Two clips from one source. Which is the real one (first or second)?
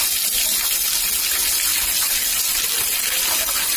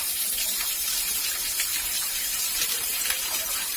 first